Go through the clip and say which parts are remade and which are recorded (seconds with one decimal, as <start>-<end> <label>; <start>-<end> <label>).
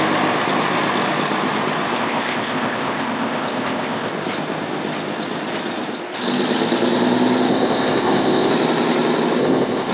0.0-1.9 recorded; 1.9-4.1 remade; 4.1-7.5 recorded; 7.5-8.5 remade; 8.5-9.4 recorded; 9.4-9.9 remade